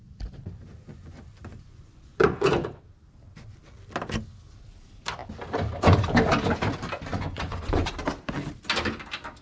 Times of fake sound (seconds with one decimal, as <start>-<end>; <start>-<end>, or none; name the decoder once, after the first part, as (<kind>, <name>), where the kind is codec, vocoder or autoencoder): 0.9-2.8 (vocoder, Vocos); 7.1-7.9